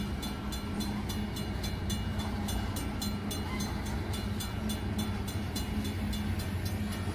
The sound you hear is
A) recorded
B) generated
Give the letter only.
A